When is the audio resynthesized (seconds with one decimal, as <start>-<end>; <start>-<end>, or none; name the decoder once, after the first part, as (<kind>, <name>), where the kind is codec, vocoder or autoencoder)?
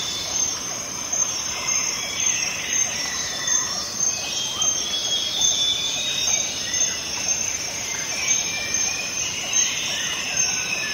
0.0-5.0 (vocoder, BigVGAN v2); 6.1-10.9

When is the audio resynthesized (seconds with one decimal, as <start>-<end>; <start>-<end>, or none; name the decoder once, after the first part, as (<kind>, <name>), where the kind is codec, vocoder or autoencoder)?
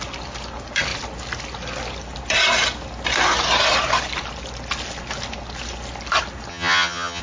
6.5-7.2 (vocoder, HiFi-GAN)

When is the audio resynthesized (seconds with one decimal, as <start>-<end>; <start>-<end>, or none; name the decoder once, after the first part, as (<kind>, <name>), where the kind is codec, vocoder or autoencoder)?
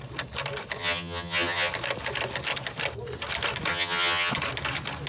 0.8-1.7 (vocoder, HiFi-GAN); 3.7-4.3